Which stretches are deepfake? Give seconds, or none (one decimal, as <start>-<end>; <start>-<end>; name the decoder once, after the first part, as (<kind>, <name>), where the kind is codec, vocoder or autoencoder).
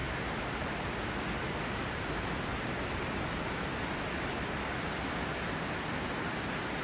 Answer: 0.0-0.9 (vocoder, BigVGAN v2)